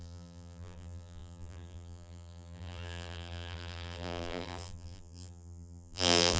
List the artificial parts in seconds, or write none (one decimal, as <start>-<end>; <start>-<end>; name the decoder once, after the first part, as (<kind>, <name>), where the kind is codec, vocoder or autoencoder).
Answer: 0.0-6.4 (vocoder, BigVGAN v2)